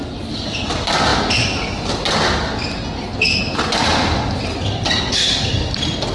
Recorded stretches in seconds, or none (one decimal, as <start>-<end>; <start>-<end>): 0.0-6.1